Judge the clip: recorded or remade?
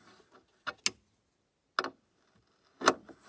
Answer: recorded